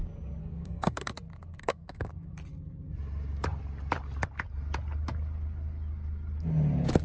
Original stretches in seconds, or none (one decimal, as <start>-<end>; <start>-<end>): 0.0-0.4; 1.1-1.6; 2.1-7.0